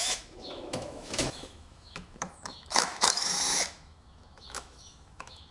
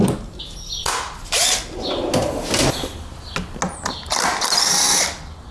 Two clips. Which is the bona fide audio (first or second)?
second